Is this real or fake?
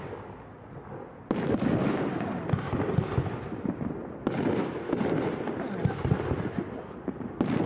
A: real